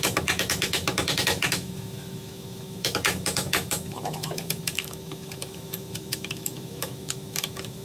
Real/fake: fake